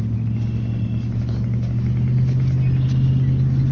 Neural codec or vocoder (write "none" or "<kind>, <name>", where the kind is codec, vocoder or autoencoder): none